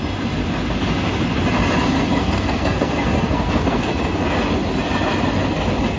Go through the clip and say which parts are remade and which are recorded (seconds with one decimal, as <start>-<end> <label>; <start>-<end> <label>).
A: 0.0-2.1 recorded; 2.1-3.9 remade; 3.9-6.0 recorded